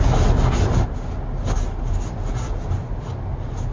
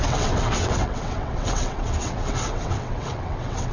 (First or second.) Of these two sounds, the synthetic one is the second